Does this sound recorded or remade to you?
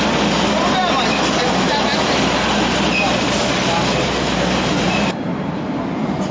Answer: recorded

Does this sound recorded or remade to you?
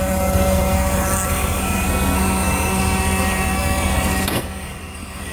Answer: remade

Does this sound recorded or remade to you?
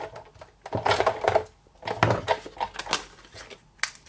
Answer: recorded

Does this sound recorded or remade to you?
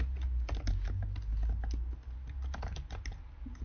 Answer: recorded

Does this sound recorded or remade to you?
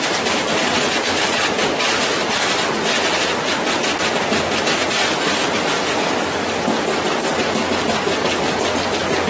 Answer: recorded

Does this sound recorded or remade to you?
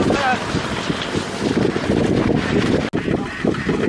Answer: recorded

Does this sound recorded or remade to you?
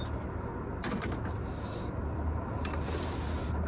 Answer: recorded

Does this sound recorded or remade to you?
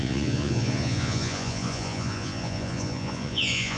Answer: remade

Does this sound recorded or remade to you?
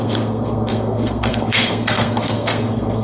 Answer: remade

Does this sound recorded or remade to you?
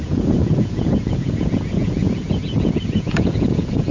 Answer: remade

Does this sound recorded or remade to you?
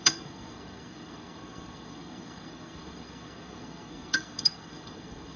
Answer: remade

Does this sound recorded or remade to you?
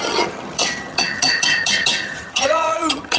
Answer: remade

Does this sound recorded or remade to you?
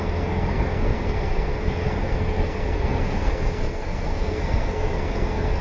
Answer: remade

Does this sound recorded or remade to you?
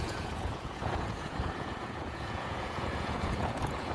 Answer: remade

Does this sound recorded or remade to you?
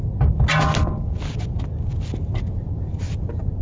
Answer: recorded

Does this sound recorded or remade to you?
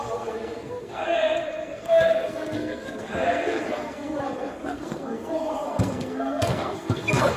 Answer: remade